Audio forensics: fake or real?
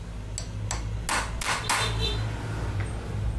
real